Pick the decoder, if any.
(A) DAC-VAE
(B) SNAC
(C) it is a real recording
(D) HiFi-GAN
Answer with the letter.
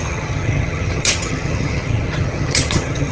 D